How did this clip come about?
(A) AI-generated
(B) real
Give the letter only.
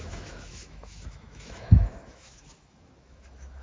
A